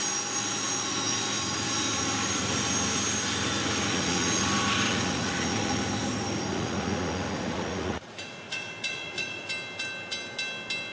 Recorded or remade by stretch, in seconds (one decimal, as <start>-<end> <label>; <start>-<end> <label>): 0.0-3.9 recorded; 3.9-4.4 remade; 4.4-4.9 recorded; 4.9-5.8 remade; 5.8-6.5 recorded; 6.5-9.5 remade; 9.5-10.9 recorded